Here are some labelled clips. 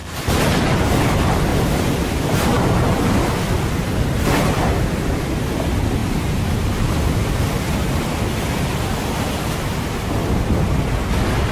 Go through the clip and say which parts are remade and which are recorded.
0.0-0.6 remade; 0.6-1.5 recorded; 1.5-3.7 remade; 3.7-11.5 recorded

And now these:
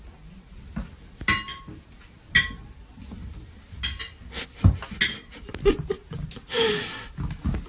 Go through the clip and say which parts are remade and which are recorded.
0.0-7.7 recorded

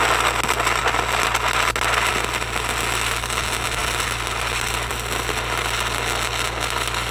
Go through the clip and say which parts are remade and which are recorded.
0.0-7.1 recorded

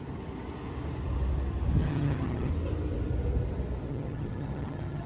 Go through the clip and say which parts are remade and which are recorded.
0.0-1.8 recorded; 1.8-2.5 remade; 2.5-3.9 recorded; 3.9-5.1 remade

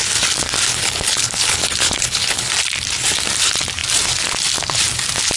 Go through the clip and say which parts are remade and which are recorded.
0.0-0.7 recorded; 0.7-2.5 remade; 2.5-5.4 recorded

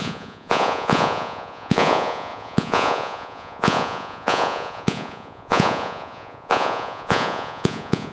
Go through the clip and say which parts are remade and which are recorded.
0.0-8.1 remade